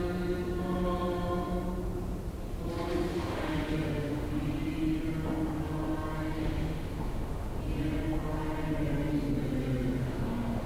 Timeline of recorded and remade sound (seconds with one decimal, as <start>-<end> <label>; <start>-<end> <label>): 0.0-3.1 recorded; 3.1-4.3 remade; 4.3-6.4 recorded; 6.4-7.6 remade; 7.6-10.0 recorded; 10.0-10.7 remade